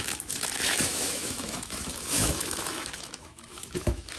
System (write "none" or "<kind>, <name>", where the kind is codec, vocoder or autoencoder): autoencoder, DAC-VAE